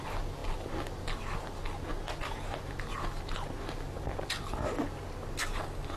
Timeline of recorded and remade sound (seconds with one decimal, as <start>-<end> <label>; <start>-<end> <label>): 0.0-6.0 recorded